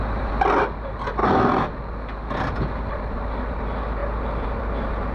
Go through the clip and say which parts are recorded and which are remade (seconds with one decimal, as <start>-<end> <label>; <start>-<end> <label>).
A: 0.0-5.1 recorded

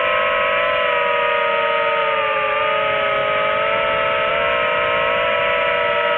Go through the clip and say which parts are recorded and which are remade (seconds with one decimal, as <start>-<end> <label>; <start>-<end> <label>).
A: 0.0-2.0 recorded; 2.0-2.5 remade; 2.5-6.2 recorded

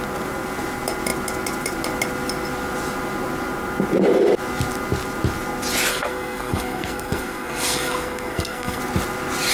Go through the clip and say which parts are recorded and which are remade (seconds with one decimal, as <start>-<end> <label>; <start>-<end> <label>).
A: 0.0-5.9 recorded; 5.9-8.8 remade; 8.8-9.5 recorded

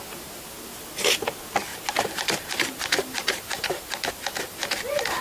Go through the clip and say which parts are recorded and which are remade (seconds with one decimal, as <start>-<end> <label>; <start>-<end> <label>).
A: 0.0-1.7 recorded; 1.7-4.1 remade; 4.1-5.2 recorded